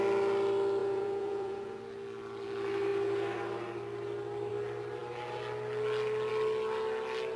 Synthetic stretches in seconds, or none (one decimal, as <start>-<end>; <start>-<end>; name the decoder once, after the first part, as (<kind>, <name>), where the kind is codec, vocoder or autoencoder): 0.8-1.8 (vocoder, Vocos)